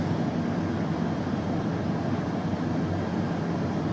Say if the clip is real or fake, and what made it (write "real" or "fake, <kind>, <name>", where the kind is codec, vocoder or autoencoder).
real